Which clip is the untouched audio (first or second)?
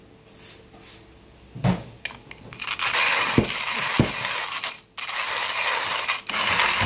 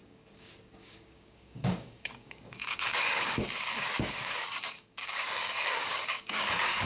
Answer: first